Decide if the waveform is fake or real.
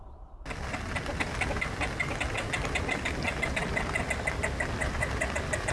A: real